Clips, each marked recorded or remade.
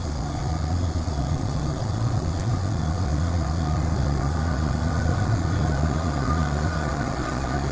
remade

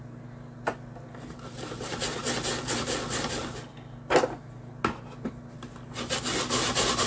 recorded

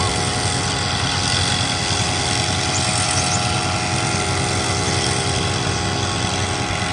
recorded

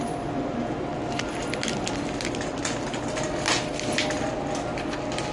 recorded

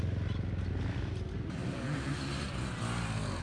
recorded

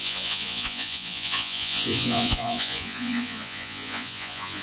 remade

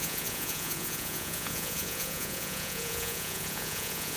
remade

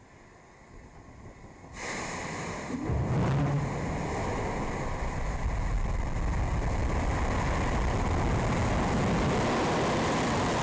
recorded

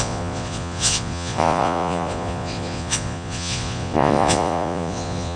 remade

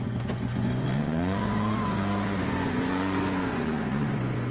remade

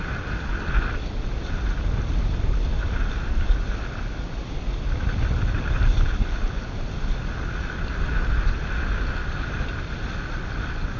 recorded